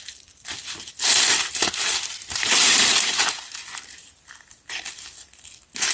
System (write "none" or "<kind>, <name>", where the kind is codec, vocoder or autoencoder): none